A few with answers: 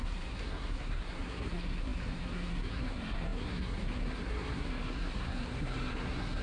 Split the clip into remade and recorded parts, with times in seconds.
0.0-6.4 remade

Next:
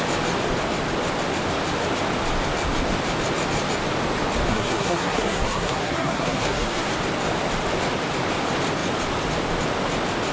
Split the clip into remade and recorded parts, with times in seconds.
0.0-4.5 recorded; 4.5-6.9 remade; 6.9-10.3 recorded

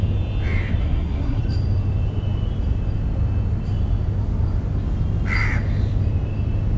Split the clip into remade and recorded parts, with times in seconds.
0.0-0.8 recorded; 0.8-1.4 remade; 1.4-6.8 recorded

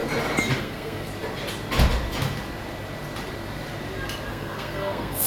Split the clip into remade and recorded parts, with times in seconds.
0.0-0.6 recorded; 0.6-1.1 remade; 1.1-4.3 recorded; 4.3-5.3 remade

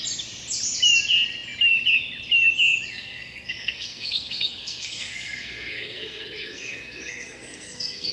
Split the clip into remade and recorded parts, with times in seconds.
0.0-2.9 recorded; 2.9-8.1 remade

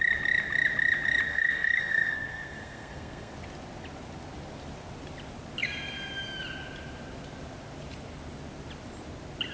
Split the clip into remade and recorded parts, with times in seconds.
0.0-1.3 recorded; 1.3-3.3 remade; 3.3-9.5 recorded